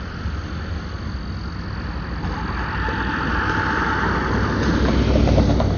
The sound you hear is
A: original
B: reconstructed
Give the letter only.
A